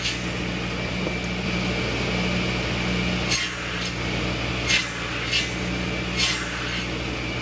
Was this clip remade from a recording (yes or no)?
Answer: no